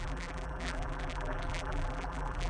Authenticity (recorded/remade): remade